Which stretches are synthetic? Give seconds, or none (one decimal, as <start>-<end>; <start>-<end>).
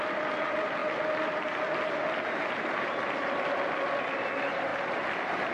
none